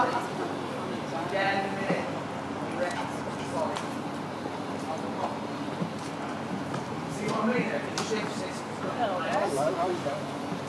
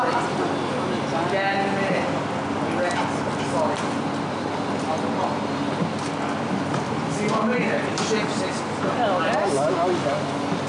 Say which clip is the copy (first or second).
first